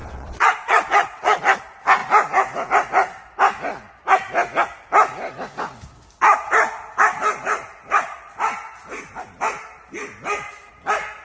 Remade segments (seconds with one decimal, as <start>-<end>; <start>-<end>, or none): 0.0-1.4